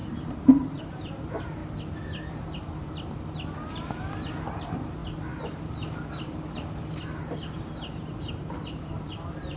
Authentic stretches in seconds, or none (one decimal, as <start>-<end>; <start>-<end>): 1.6-4.5; 5.0-8.3